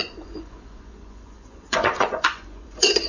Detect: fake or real fake